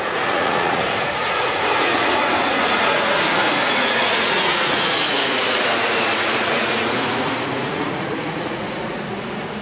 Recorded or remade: remade